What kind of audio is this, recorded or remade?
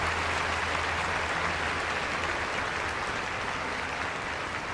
recorded